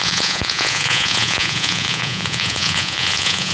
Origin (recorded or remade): remade